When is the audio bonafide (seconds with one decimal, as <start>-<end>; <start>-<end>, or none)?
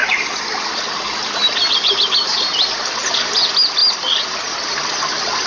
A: 0.0-5.5